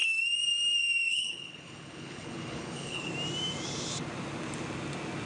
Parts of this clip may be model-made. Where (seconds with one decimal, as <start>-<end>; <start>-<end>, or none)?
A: 1.1-3.1